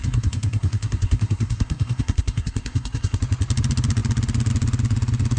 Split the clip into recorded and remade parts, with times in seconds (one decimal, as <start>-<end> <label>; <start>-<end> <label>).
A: 0.0-3.2 remade; 3.2-5.4 recorded